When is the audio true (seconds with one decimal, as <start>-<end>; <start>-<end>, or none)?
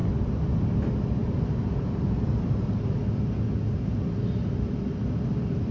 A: 0.0-5.7